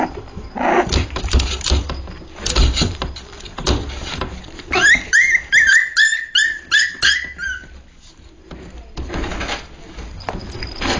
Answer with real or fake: real